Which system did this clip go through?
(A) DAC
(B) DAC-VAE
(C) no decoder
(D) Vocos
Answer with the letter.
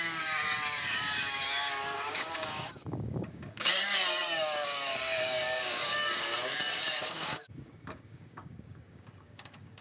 A